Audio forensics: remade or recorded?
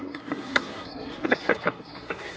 remade